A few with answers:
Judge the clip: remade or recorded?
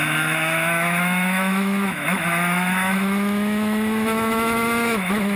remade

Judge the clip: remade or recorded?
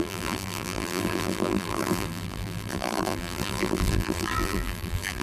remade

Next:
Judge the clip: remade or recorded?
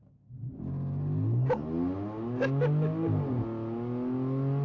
recorded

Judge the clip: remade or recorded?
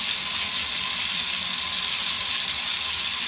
recorded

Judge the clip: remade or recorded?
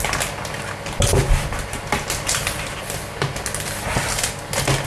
recorded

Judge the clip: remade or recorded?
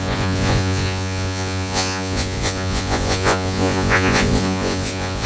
remade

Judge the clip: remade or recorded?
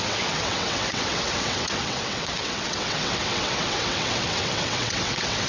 remade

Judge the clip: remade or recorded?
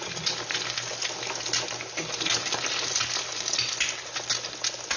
recorded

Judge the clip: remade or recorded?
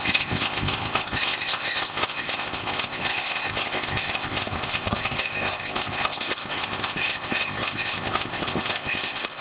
remade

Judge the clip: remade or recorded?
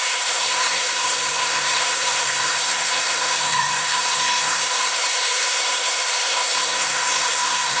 remade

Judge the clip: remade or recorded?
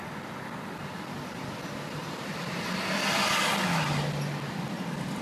recorded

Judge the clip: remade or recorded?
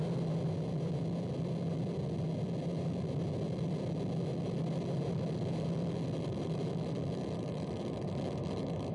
recorded